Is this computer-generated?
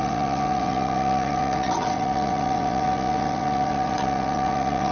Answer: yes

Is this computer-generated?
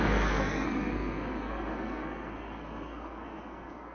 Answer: yes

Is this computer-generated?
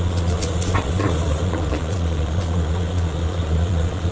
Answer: yes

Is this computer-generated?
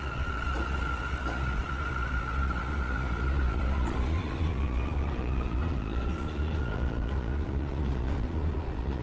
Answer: yes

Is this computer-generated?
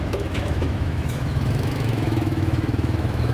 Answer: yes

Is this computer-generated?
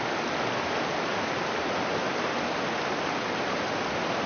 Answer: no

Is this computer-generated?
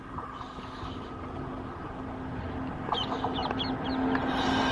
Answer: no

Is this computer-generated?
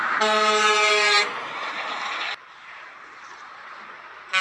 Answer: no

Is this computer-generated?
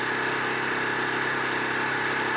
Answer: no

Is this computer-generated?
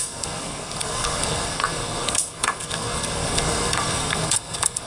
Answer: yes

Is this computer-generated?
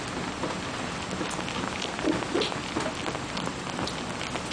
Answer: no